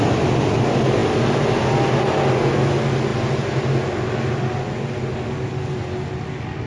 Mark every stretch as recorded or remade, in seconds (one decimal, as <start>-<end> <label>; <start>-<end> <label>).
0.0-6.7 recorded